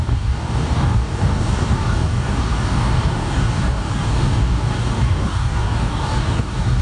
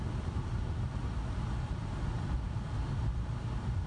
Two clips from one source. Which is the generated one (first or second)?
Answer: first